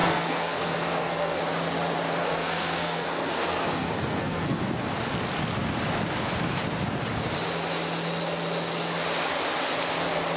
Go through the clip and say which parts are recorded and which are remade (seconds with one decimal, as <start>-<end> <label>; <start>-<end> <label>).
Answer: 0.0-1.4 remade; 1.4-2.2 recorded; 2.2-4.6 remade; 4.6-10.4 recorded